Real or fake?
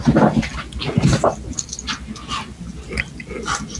real